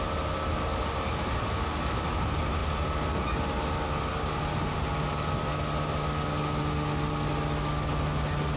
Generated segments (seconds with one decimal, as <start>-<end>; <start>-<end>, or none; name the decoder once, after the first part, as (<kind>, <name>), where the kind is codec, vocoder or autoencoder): none